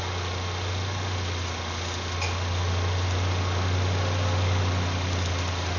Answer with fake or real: real